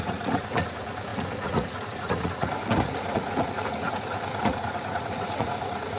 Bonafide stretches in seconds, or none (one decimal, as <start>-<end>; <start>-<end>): none